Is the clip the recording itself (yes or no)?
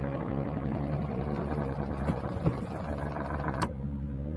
no